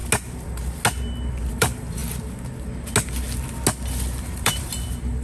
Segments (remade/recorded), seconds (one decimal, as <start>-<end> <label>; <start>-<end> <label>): 0.0-1.5 recorded; 1.5-2.0 remade; 2.0-4.2 recorded; 4.2-5.2 remade